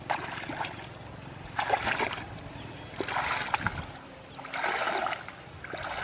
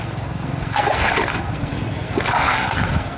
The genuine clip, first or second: first